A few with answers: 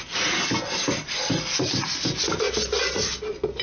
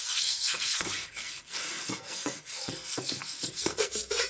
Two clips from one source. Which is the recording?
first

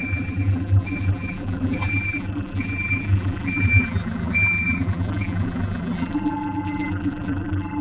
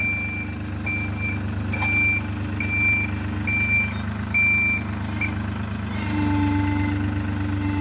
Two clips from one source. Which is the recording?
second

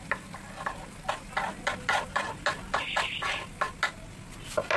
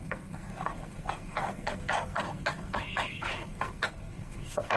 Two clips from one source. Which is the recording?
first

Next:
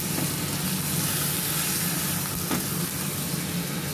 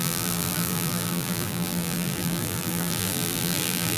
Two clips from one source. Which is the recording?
first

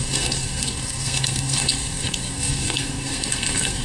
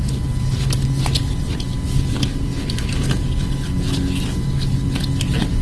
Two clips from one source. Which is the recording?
second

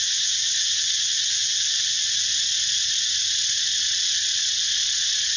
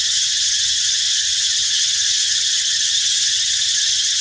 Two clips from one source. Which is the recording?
first